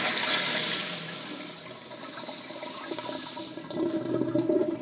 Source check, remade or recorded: remade